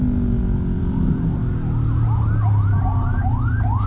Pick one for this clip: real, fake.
real